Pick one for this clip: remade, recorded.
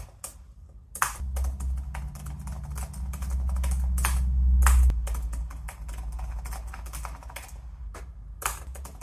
recorded